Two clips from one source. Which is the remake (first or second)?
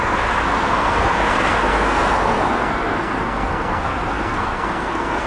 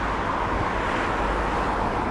first